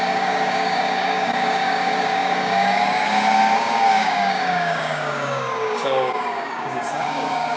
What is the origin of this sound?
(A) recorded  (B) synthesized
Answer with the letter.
B